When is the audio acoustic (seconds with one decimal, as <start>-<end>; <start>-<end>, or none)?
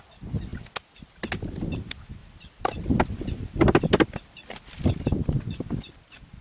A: 0.0-2.2; 4.9-6.4